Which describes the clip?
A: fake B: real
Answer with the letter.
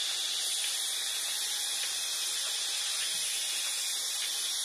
B